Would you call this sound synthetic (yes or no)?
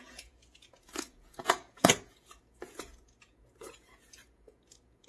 yes